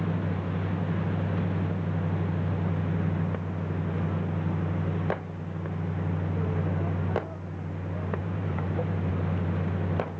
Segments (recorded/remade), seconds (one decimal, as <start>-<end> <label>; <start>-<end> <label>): 0.0-8.2 recorded; 8.2-9.1 remade; 9.1-10.2 recorded